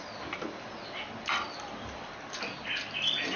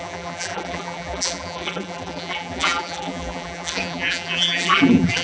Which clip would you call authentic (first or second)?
first